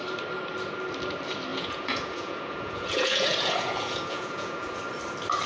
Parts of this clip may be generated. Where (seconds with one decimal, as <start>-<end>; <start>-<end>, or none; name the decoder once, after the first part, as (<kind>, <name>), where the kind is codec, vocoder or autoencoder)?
1.5-4.8 (vocoder, Vocos)